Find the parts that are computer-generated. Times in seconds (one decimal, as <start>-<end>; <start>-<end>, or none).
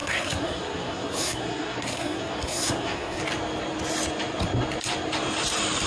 0.0-3.2